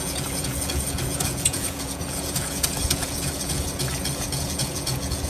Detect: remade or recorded remade